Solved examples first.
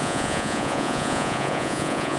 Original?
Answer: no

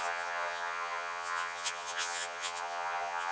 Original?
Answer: no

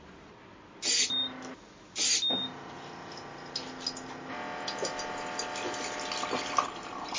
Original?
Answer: yes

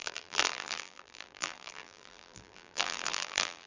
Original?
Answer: no